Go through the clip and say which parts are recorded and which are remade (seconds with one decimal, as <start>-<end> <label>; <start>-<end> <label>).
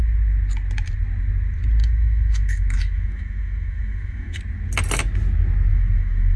0.0-1.8 recorded; 1.8-4.4 remade; 4.4-5.7 recorded; 5.7-6.4 remade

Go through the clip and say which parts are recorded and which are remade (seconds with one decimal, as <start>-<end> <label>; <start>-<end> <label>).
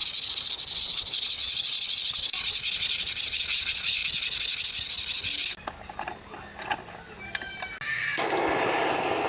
0.0-0.8 recorded; 0.8-4.0 remade; 4.0-9.3 recorded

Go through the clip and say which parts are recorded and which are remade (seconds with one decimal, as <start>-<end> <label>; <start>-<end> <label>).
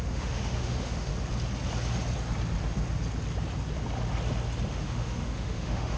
0.0-1.1 remade; 1.1-4.7 recorded; 4.7-6.0 remade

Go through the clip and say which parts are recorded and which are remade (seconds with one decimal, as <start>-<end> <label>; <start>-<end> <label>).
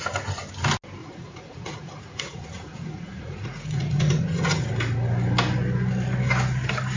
0.0-1.0 recorded; 1.0-4.7 remade; 4.7-7.0 recorded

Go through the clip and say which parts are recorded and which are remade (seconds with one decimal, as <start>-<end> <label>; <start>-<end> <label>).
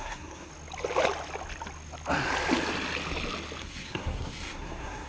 0.0-0.5 remade; 0.5-3.6 recorded; 3.6-5.1 remade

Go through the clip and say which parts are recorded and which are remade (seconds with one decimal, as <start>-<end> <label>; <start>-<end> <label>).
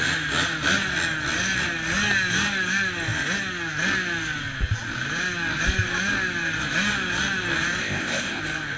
0.0-7.8 recorded; 7.8-8.4 remade; 8.4-8.8 recorded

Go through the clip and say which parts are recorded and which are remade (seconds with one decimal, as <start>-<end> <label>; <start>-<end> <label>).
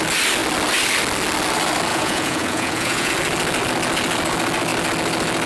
0.0-1.9 recorded; 1.9-3.1 remade; 3.1-5.5 recorded